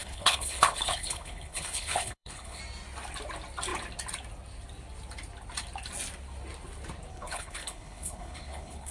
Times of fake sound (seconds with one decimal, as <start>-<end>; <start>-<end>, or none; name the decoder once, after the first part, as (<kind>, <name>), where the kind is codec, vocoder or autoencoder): 0.0-2.6 (codec, HILCodec); 7.1-8.9